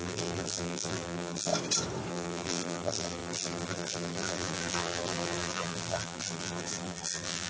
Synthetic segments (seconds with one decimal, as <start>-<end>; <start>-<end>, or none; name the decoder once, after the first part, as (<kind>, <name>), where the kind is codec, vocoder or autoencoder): 0.0-1.5 (vocoder, BigVGAN v2); 2.1-7.5